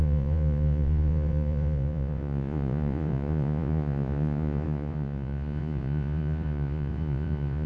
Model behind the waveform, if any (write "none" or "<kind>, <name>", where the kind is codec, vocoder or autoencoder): vocoder, Vocos